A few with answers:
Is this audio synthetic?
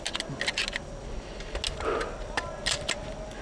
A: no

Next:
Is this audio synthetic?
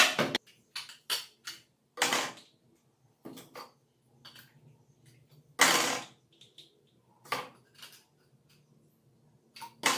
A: no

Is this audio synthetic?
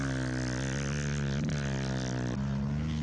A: no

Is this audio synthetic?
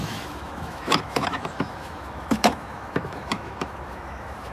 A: yes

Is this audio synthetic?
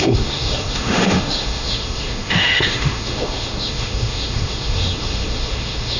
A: yes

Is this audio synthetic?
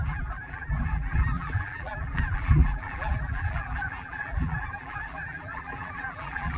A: yes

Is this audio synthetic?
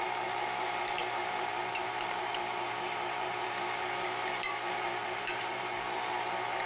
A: yes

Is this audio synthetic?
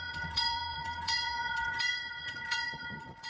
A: yes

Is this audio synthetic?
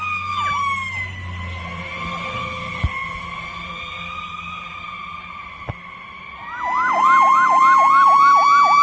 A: no